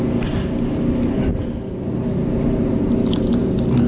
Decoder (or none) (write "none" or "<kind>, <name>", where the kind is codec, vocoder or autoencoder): none